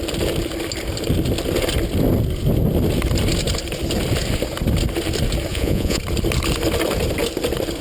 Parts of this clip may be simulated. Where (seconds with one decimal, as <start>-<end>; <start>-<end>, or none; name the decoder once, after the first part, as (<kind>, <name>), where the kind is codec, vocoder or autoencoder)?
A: 5.5-6.0 (vocoder, Vocos)